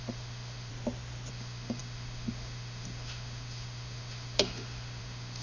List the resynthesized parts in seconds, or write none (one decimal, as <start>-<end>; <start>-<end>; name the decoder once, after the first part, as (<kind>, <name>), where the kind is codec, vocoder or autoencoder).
0.0-0.7 (autoencoder, DAC-VAE); 1.3-5.4